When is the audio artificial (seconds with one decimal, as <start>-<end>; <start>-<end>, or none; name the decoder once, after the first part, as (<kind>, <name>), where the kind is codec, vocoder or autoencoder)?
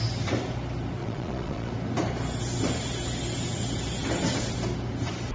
1.0-1.7 (vocoder, Vocos)